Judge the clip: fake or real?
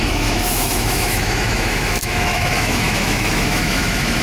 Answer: fake